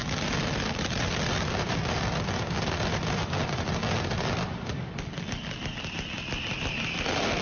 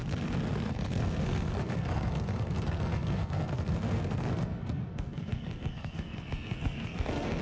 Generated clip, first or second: second